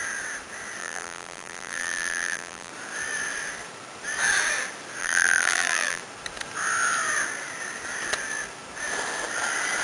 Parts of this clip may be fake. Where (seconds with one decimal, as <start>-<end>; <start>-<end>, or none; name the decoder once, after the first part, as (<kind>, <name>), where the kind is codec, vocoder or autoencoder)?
0.8-2.7 (vocoder, BigVGAN v2); 5.0-6.0